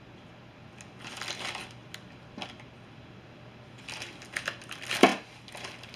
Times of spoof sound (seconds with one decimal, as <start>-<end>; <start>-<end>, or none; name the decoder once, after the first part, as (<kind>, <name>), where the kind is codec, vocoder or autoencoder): none